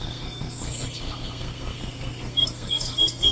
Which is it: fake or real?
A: fake